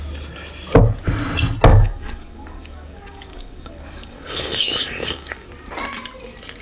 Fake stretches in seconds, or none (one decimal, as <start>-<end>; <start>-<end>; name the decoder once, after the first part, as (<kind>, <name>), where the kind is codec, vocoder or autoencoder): 1.7-5.5 (codec, DAC)